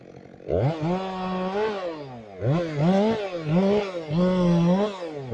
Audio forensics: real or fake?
real